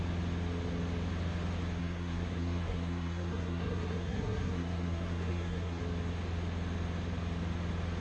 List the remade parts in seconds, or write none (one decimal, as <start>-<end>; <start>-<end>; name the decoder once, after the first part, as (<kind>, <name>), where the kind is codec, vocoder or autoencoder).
1.8-5.8 (codec, SNAC)